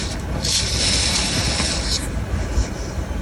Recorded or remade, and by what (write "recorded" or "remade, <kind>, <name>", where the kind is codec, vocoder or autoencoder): recorded